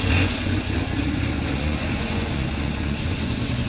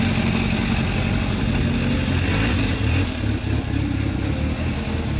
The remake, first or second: first